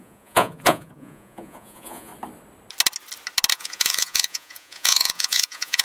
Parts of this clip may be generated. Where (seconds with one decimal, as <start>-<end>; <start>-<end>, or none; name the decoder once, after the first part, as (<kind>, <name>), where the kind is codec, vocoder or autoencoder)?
0.0-2.1 (vocoder, Vocos); 3.5-5.8